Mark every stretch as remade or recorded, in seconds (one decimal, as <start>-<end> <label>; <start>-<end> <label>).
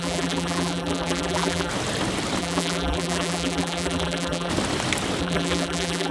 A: 0.0-1.7 remade; 1.7-2.4 recorded; 2.4-4.5 remade; 4.5-5.2 recorded; 5.2-6.1 remade